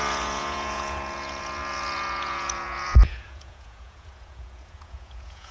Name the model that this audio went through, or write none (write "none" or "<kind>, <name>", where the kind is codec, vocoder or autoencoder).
vocoder, Vocos